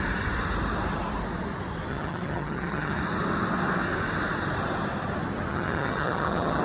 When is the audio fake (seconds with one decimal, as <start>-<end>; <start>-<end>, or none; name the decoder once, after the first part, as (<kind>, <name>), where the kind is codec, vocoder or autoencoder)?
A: 1.9-3.0 (vocoder, HiFi-GAN); 5.5-6.6